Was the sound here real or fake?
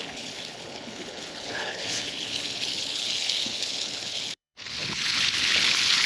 fake